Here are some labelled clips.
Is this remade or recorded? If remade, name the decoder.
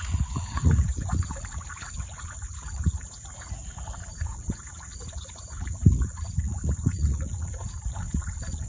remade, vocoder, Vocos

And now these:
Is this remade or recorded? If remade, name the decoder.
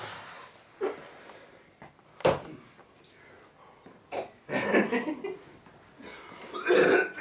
recorded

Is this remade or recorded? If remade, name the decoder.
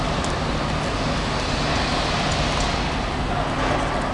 recorded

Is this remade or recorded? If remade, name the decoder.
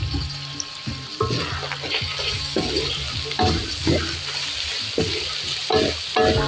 recorded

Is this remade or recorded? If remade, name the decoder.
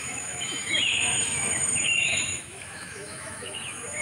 remade, autoencoder, DAC-VAE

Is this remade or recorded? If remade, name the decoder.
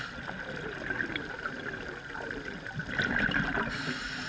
recorded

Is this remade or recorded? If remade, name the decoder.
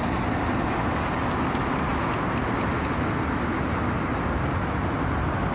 recorded